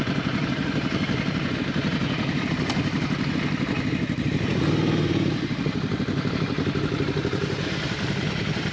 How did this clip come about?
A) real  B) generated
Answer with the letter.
B